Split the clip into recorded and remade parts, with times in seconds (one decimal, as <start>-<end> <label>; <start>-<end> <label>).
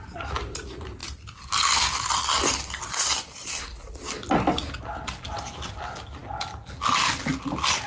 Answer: 0.0-7.9 recorded